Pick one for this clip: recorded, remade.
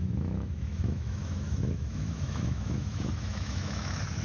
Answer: remade